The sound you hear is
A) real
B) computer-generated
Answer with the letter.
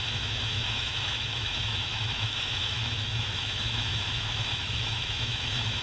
B